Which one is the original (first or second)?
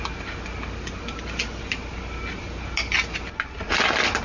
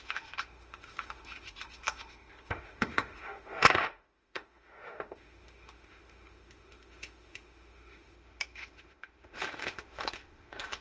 first